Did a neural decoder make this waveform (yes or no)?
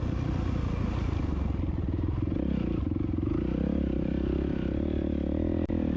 no